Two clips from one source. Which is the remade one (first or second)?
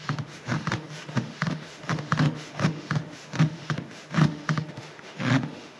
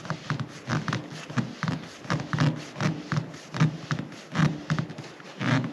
first